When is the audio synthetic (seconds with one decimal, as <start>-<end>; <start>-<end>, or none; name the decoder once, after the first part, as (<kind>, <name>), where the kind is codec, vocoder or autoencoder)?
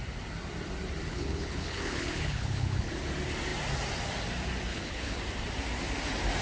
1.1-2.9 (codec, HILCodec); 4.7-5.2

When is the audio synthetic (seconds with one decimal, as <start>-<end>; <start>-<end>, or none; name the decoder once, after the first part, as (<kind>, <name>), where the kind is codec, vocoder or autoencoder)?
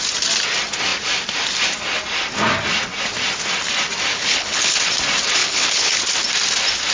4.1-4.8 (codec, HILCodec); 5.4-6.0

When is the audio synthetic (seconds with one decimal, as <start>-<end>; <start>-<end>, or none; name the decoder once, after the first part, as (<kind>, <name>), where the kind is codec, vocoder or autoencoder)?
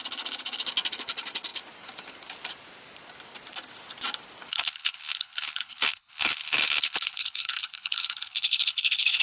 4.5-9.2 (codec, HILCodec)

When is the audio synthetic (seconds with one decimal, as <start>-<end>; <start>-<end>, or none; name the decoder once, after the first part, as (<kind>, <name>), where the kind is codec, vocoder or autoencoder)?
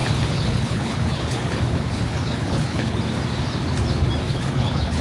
0.0-3.0 (codec, HILCodec); 4.3-5.0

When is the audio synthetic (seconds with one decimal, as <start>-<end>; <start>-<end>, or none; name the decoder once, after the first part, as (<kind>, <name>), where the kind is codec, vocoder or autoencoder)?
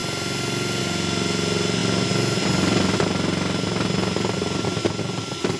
none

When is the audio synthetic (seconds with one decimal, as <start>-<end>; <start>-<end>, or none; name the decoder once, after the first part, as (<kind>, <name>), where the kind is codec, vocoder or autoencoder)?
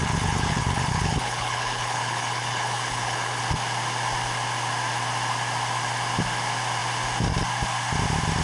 0.0-3.4 (codec, HILCodec)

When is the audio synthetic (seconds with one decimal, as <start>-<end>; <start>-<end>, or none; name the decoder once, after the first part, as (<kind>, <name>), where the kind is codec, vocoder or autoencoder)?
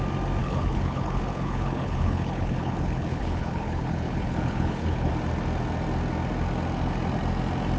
0.4-5.1 (codec, HILCodec)